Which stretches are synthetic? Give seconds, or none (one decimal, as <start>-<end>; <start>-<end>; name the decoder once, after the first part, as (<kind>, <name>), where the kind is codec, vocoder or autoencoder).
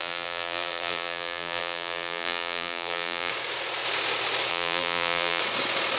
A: 0.0-3.3 (vocoder, BigVGAN v2); 4.5-5.4